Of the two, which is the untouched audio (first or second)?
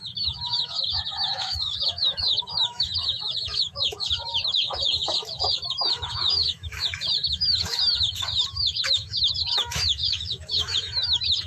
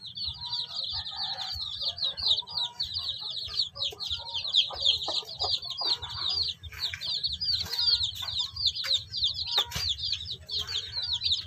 second